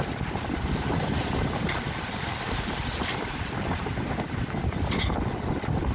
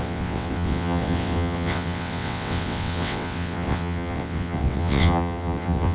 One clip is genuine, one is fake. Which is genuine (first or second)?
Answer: first